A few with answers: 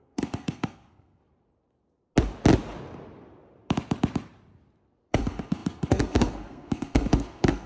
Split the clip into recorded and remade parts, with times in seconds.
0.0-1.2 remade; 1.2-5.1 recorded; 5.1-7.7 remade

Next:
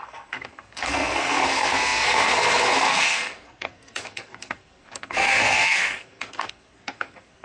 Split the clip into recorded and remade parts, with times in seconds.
0.0-7.4 remade